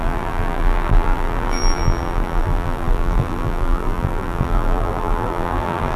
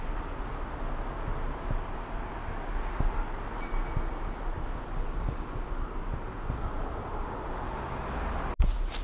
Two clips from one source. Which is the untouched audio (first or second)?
second